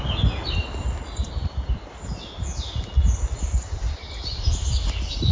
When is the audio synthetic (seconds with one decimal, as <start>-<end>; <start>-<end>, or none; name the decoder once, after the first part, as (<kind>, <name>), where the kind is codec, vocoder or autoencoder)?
1.4-1.9 (vocoder, BigVGAN v2); 3.0-4.5